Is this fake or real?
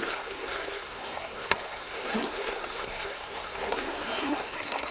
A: fake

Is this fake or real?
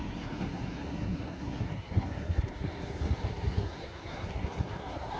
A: fake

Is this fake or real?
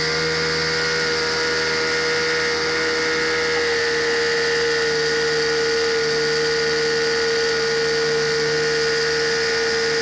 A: real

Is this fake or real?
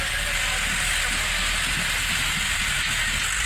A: real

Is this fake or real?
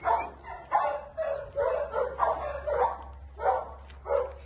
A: real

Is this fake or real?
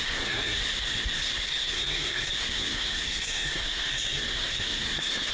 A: fake